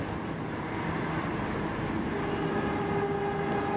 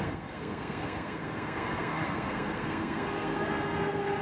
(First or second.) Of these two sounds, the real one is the first